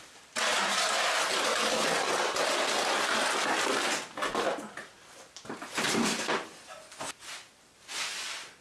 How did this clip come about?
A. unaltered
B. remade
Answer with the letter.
A